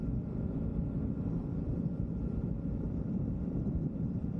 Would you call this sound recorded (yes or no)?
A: no